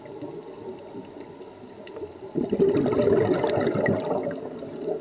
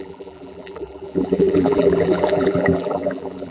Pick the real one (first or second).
first